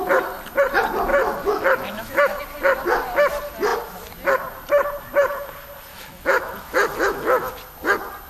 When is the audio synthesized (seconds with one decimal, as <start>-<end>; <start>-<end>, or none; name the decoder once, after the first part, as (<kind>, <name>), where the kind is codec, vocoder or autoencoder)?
1.1-2.4 (autoencoder, DAC-VAE); 5.9-7.5